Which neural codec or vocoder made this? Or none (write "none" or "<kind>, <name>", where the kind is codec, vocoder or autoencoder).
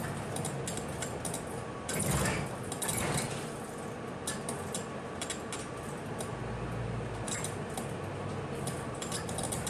none